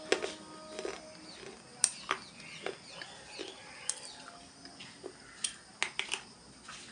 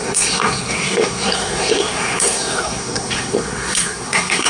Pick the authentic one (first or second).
first